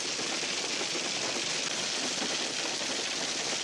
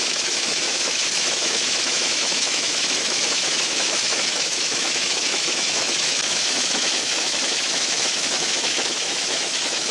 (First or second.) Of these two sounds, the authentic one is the first